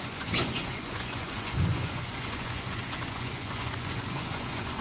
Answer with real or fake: fake